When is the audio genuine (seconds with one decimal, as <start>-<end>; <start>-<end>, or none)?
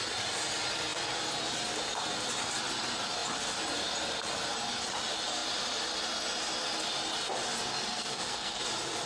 0.0-7.9; 8.6-9.1